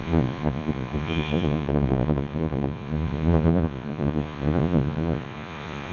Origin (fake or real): fake